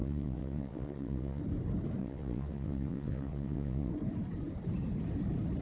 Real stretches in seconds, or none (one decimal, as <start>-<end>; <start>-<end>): 1.4-2.0; 3.9-5.6